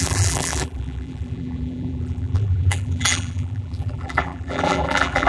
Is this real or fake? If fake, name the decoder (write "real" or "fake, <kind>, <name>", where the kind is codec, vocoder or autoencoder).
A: fake, vocoder, BigVGAN v2